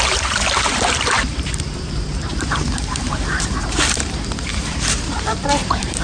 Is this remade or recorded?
remade